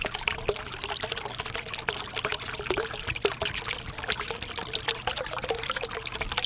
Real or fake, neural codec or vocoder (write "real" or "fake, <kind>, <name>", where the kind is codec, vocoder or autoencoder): real